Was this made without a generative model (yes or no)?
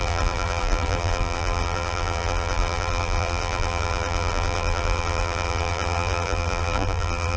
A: no